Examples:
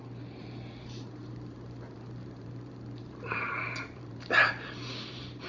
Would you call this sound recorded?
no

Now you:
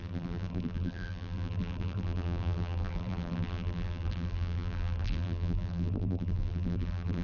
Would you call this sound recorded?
no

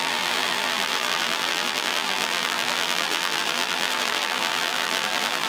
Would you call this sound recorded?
no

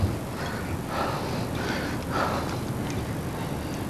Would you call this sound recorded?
yes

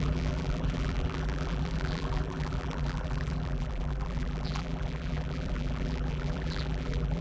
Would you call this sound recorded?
no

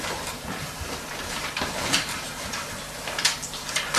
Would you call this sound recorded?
no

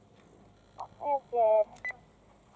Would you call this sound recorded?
yes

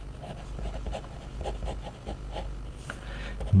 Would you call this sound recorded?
yes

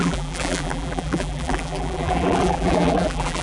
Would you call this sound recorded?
no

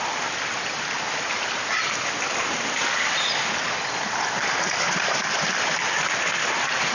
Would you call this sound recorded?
no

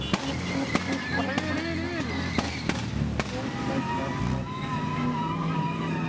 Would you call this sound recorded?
yes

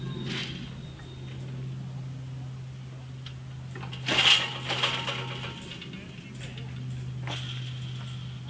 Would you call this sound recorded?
yes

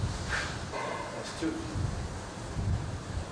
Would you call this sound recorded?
yes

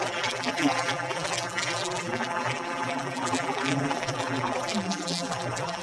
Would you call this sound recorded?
no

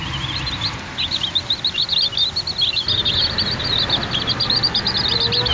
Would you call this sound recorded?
yes